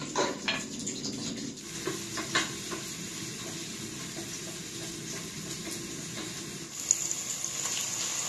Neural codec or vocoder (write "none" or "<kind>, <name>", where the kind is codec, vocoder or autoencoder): none